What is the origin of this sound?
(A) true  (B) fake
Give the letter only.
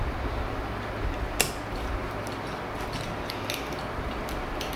A